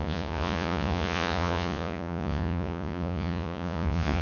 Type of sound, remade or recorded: remade